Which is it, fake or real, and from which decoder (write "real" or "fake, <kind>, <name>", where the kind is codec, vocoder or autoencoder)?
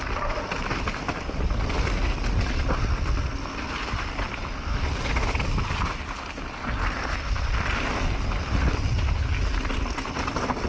real